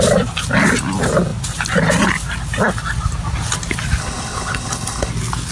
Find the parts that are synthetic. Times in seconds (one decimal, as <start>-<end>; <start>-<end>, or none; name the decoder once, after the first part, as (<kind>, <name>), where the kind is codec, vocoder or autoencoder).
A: 4.0-5.1 (codec, HILCodec)